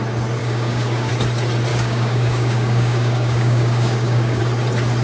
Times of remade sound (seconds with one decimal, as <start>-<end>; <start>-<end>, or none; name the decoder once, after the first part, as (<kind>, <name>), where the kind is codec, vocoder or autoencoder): 0.4-1.1 (codec, DAC); 1.7-4.4